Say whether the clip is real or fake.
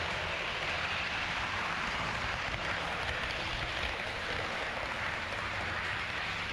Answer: fake